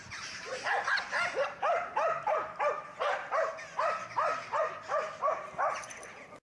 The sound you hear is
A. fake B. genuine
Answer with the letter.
B